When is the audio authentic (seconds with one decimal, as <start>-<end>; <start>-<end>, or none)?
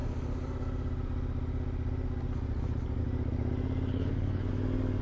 0.0-3.9; 4.5-5.0